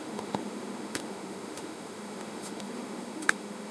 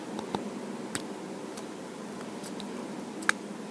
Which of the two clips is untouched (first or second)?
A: second